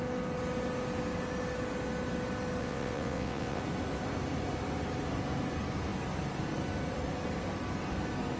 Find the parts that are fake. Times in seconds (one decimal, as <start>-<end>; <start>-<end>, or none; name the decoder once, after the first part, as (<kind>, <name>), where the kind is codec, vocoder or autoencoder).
2.6-3.6 (vocoder, WaveNeXt)